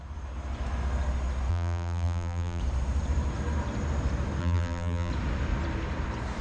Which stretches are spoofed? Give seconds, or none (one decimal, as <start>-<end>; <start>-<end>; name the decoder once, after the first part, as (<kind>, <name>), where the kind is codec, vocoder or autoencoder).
1.5-2.6 (vocoder, BigVGAN v2); 4.4-5.1